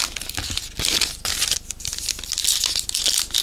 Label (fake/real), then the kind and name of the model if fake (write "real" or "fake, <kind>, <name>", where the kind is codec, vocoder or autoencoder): real